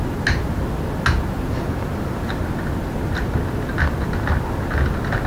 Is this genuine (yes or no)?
yes